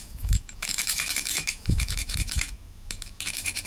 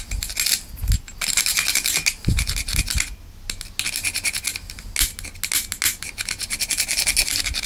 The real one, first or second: second